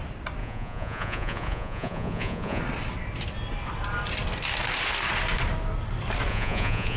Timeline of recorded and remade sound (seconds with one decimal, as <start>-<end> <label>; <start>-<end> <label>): 0.0-0.4 recorded; 0.4-2.6 remade; 2.6-6.3 recorded; 6.3-7.0 remade